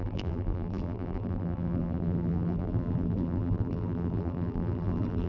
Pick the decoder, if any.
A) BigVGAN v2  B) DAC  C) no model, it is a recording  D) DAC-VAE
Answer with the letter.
A